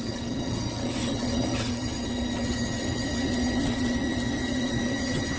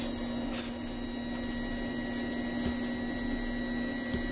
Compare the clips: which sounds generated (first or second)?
first